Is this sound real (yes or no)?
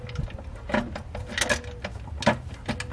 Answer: yes